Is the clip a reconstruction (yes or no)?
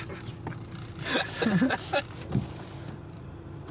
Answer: no